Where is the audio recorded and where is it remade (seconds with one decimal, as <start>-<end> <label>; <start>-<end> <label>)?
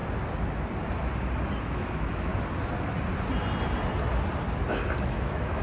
0.0-1.6 recorded; 1.6-2.3 remade; 2.3-5.0 recorded; 5.0-5.6 remade